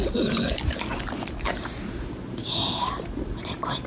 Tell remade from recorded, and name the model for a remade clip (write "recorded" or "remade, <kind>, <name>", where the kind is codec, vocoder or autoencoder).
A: recorded